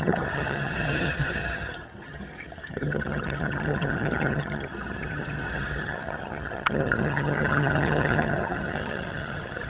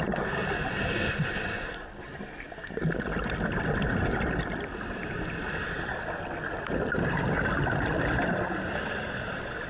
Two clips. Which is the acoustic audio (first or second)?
second